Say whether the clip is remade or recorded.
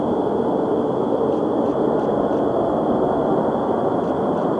recorded